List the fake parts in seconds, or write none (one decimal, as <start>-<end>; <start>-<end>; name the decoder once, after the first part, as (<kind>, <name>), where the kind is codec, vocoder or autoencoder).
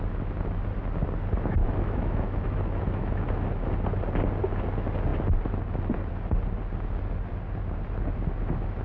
1.6-3.2 (autoencoder, DAC-VAE)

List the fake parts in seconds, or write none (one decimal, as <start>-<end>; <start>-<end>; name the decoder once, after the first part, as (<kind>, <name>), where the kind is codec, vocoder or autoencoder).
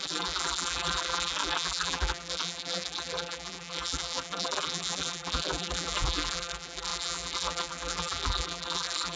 0.0-9.2 (vocoder, BigVGAN v2)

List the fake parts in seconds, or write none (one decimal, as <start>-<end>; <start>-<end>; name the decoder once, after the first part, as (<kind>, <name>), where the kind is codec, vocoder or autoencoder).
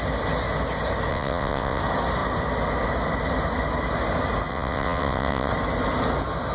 1.1-1.8 (vocoder, WaveNeXt); 4.5-5.5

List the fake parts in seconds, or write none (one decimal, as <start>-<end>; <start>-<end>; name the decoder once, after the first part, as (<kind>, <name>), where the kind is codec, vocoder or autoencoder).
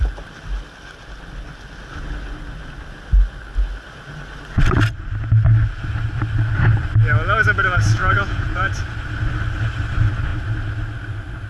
8.0-8.7 (vocoder, Vocos)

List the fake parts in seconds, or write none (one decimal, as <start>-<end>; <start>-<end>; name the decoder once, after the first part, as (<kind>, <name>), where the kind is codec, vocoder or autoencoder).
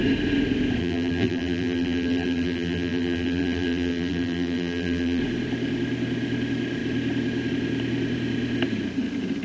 0.8-5.2 (vocoder, BigVGAN v2)